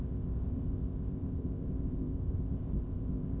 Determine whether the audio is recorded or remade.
remade